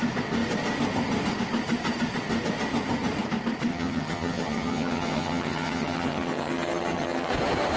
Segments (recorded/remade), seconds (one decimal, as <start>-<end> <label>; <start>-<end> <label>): 0.0-3.7 recorded; 3.7-7.3 remade; 7.3-7.8 recorded